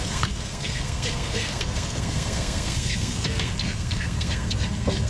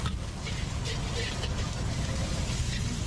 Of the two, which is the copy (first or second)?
first